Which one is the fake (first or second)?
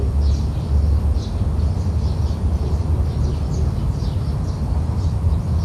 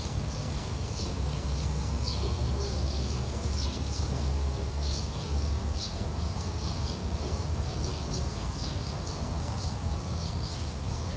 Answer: second